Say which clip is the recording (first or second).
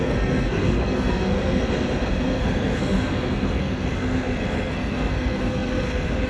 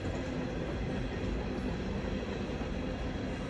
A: second